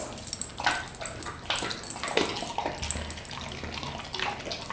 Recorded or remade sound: recorded